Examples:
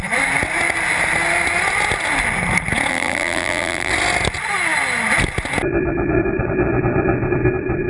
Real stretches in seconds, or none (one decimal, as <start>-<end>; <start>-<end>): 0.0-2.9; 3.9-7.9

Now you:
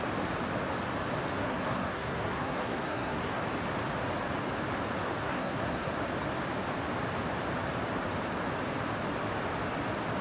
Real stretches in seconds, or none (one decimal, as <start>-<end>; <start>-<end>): 0.0-1.4; 3.3-5.2; 5.9-10.2

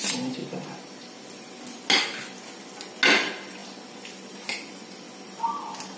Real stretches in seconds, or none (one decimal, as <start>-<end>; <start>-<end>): 0.0-6.0

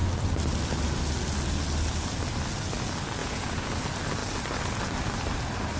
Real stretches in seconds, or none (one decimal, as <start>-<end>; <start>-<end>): 0.0-3.2; 3.7-5.8